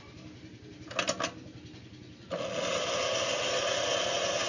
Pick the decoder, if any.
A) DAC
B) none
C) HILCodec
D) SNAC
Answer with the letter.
B